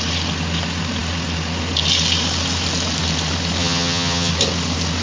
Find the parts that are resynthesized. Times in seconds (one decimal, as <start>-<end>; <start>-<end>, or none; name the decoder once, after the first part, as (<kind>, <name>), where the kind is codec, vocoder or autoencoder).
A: 3.6-4.3 (vocoder, HiFi-GAN)